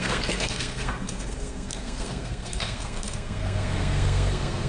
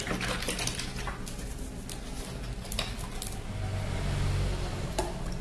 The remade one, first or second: first